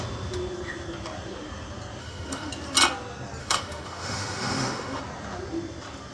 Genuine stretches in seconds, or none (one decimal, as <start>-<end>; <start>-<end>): 0.0-2.0; 2.5-3.4; 5.0-6.1